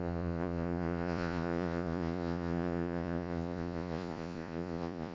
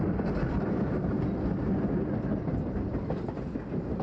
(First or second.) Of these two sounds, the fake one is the first